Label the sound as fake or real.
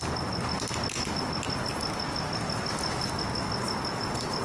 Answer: real